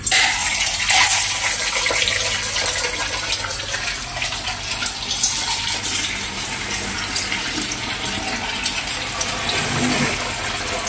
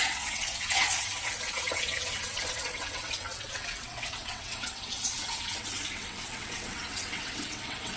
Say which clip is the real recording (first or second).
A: first